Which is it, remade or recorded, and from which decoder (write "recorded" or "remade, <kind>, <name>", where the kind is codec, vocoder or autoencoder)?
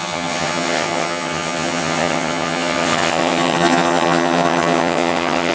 remade, vocoder, HiFi-GAN